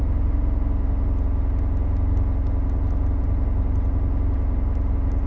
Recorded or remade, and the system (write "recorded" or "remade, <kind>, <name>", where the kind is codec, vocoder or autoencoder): recorded